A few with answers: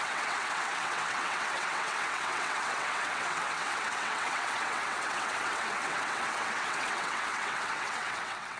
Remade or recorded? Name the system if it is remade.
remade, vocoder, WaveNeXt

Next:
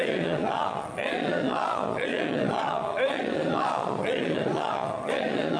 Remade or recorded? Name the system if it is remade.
remade, vocoder, Vocos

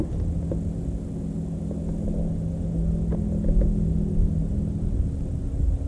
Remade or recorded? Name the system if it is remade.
recorded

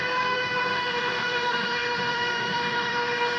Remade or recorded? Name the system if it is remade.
remade, autoencoder, DAC-VAE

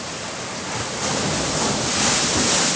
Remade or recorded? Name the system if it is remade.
recorded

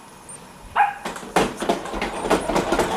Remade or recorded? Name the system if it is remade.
recorded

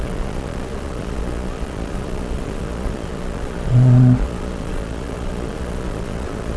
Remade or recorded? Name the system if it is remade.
remade, vocoder, Vocos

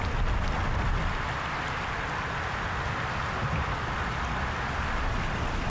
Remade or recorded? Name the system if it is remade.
recorded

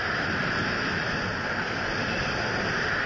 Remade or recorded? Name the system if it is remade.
recorded